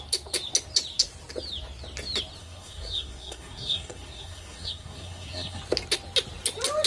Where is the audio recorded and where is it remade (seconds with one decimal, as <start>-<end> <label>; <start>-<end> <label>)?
0.0-2.4 recorded; 2.4-5.6 remade; 5.6-6.9 recorded